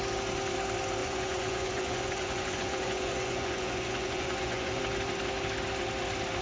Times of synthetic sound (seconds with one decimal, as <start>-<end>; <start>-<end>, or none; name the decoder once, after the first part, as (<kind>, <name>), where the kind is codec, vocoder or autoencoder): 1.0-4.8 (vocoder, Vocos)